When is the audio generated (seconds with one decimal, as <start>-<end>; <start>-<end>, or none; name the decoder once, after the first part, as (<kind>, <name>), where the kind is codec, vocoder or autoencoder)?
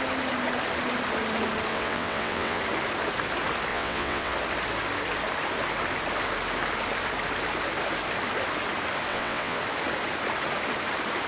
1.7-2.6 (vocoder, WaveNeXt); 3.7-4.3; 9.1-9.6